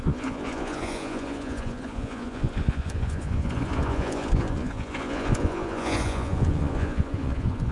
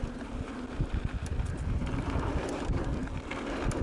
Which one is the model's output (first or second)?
first